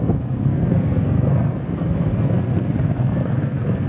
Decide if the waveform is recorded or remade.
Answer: remade